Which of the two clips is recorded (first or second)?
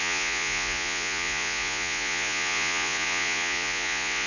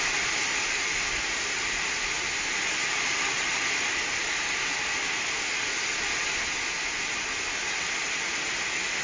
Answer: second